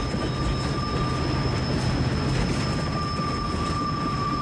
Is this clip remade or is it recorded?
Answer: recorded